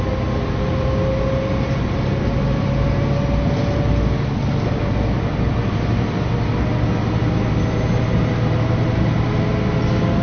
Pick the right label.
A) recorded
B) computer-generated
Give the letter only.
A